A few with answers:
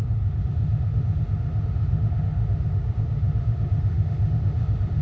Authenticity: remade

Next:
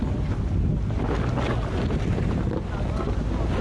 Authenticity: recorded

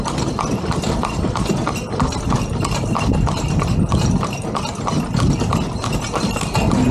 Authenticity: recorded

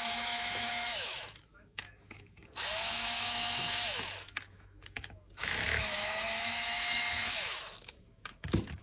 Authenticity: remade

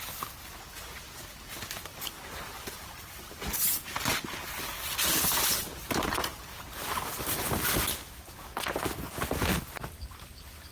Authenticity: recorded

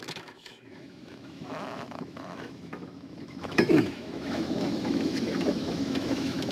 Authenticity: remade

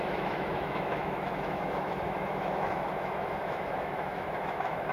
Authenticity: remade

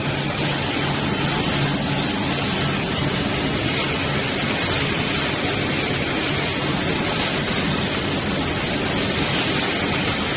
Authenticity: recorded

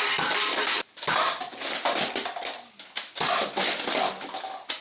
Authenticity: recorded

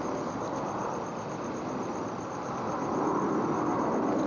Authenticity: recorded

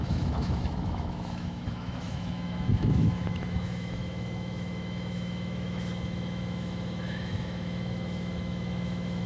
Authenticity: remade